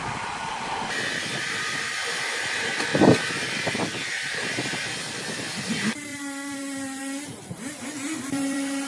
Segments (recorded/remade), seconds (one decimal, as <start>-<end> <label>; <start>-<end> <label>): 0.0-2.9 remade; 2.9-3.7 recorded; 3.7-7.0 remade; 7.0-7.9 recorded; 7.9-8.9 remade